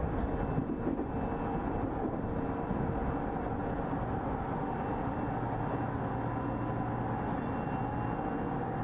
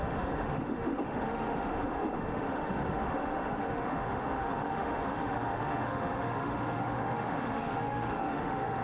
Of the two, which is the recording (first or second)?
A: first